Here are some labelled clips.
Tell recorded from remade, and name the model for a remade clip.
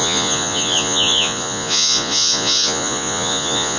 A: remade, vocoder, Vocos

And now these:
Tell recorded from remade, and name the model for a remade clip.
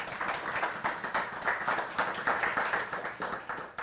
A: recorded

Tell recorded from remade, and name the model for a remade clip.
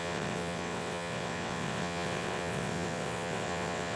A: remade, vocoder, WaveNeXt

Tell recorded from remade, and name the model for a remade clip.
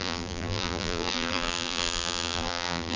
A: remade, vocoder, BigVGAN v2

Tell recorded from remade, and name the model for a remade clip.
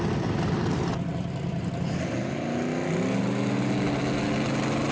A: recorded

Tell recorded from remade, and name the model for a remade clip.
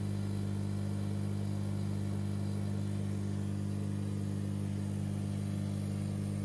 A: recorded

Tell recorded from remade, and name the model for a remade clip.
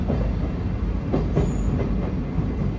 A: recorded